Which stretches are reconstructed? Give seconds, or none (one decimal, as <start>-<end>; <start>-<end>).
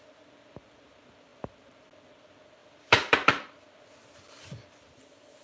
2.6-3.5